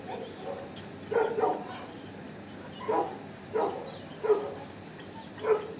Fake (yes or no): no